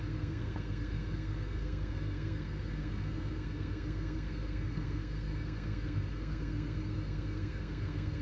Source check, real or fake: fake